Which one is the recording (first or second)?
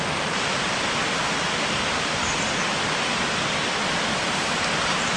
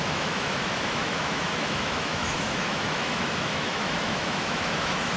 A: first